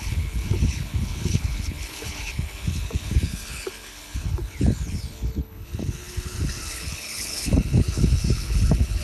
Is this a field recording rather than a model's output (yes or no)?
no